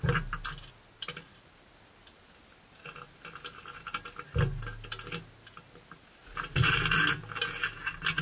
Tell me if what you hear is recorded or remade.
recorded